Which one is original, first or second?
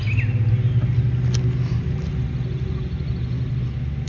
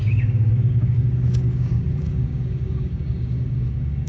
first